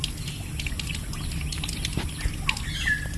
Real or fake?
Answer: real